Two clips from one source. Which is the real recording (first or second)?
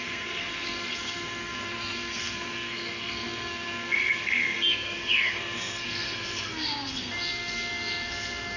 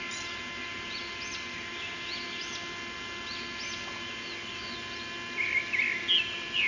second